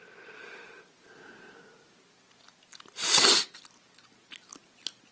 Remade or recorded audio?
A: recorded